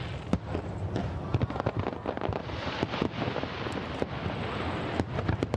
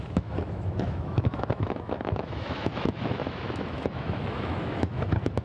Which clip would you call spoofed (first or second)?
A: second